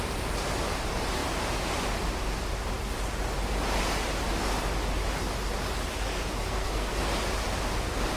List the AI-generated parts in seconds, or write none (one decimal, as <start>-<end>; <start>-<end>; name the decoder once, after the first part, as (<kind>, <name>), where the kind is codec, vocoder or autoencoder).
6.4-7.1 (codec, SNAC)